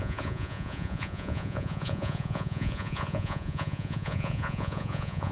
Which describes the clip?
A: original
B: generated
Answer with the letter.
B